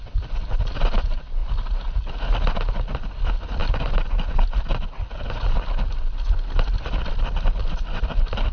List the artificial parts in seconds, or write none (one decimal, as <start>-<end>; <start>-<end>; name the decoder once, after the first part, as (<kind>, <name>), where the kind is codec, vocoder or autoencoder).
none